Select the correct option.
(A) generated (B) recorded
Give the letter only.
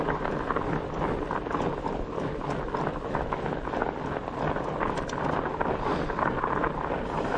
B